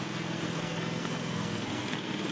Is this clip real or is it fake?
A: fake